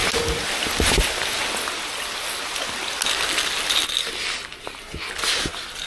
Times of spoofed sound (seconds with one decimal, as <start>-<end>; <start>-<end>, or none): none